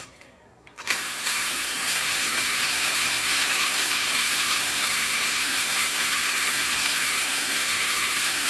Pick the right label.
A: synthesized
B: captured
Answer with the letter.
A